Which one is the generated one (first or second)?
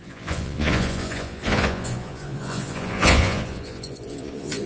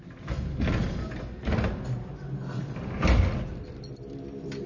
first